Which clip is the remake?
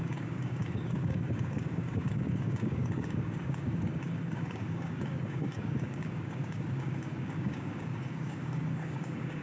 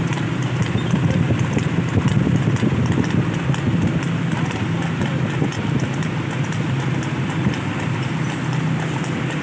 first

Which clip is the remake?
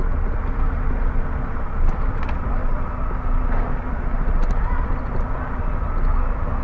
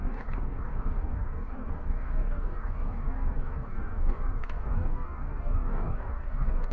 second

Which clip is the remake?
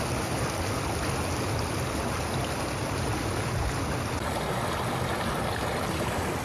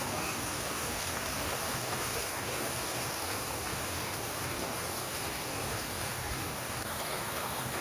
second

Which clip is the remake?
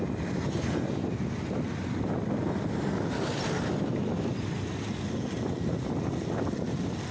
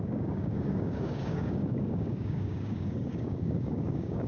second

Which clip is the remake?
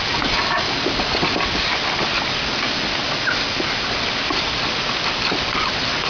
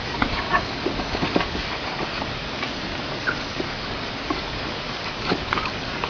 second